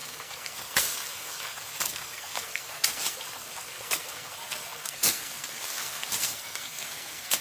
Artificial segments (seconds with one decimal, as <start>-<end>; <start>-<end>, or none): 0.0-7.4